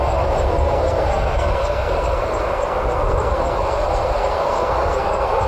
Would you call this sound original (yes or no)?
no